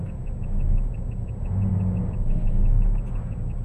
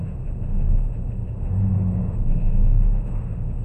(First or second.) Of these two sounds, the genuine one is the first